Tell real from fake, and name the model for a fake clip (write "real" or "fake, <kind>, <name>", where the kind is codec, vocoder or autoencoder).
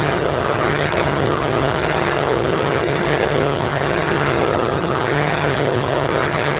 fake, vocoder, HiFi-GAN